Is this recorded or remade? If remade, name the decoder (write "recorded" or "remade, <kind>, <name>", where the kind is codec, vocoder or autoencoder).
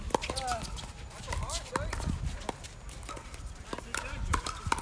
recorded